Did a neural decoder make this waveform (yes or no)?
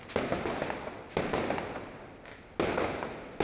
no